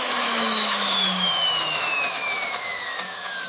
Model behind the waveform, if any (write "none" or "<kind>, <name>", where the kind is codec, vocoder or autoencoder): autoencoder, DAC-VAE